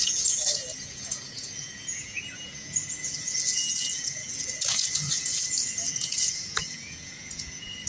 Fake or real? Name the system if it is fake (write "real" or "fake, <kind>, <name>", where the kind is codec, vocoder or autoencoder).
fake, vocoder, Vocos